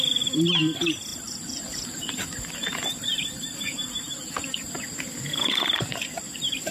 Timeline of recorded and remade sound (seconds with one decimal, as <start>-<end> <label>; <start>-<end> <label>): 0.0-1.1 recorded; 1.1-4.8 remade; 4.8-6.7 recorded